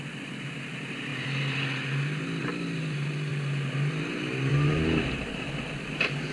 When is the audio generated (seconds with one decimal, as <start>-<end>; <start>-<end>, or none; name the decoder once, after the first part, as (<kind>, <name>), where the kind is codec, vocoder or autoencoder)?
4.5-5.5 (vocoder, BigVGAN v2)